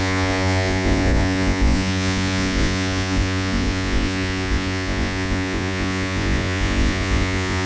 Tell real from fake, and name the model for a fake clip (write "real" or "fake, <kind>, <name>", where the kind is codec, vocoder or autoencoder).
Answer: fake, vocoder, Vocos